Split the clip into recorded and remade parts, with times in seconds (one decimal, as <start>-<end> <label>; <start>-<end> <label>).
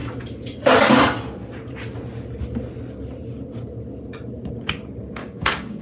0.0-5.2 recorded; 5.2-5.8 remade